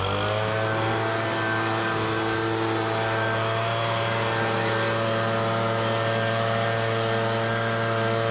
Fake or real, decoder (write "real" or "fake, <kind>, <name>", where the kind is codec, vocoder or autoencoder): real